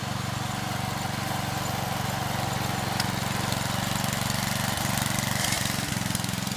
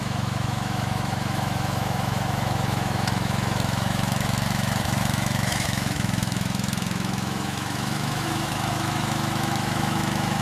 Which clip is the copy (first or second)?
second